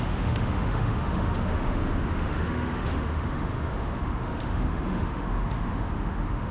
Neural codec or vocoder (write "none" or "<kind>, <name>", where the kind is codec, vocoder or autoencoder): autoencoder, DAC-VAE